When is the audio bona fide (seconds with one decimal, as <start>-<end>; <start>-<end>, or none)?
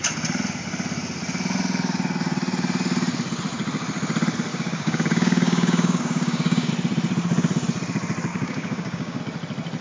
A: 0.0-4.5; 6.7-8.3; 9.2-9.8